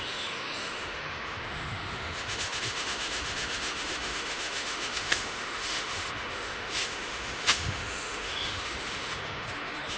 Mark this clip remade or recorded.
remade